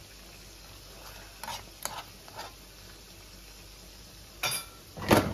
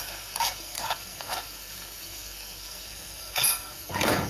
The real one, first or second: first